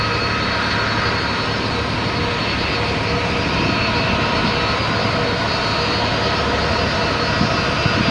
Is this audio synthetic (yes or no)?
no